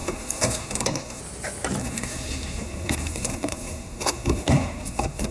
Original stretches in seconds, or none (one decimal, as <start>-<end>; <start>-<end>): 1.2-1.8